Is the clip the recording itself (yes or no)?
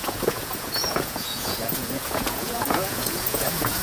no